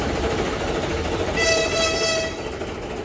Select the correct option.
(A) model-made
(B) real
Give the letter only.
B